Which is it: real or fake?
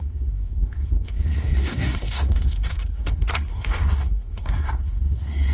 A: fake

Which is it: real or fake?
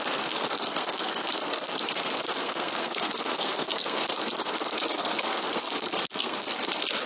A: fake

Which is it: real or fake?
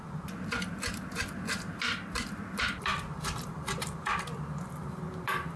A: fake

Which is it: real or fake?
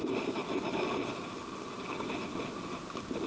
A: real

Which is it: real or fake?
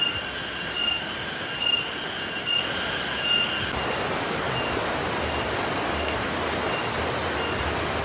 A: real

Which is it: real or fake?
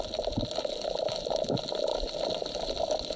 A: real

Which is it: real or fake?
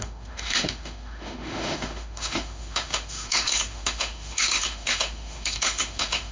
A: fake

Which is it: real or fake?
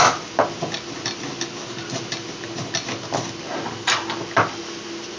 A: real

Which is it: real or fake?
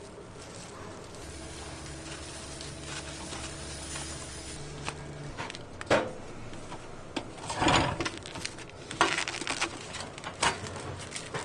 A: real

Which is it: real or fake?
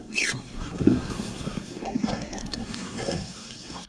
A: fake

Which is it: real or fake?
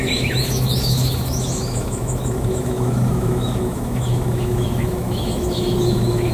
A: fake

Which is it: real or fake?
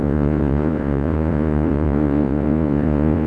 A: fake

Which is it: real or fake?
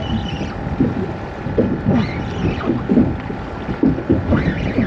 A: real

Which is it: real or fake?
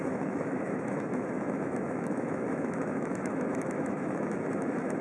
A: fake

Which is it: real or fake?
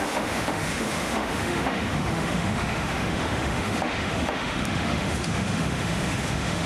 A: fake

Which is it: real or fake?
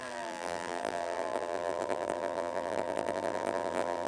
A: fake